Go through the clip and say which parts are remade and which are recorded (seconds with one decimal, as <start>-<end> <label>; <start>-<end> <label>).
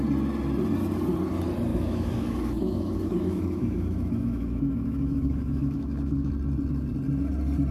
0.0-1.7 recorded; 1.7-6.3 remade; 6.3-7.7 recorded